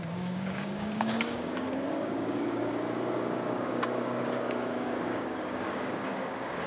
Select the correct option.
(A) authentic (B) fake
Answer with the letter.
B